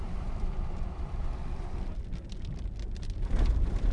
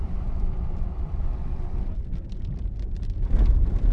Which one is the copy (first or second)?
first